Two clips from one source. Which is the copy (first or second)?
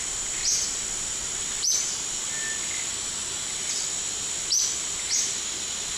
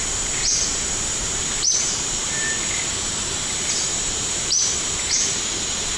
second